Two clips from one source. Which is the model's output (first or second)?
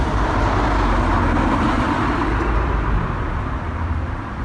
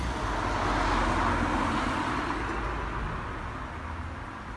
first